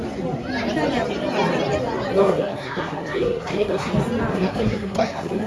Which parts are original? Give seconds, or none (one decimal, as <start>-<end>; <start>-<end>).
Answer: 0.0-2.2; 3.9-4.3